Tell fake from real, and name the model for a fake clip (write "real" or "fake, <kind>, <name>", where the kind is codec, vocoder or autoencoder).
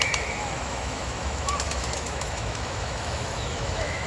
fake, autoencoder, DAC-VAE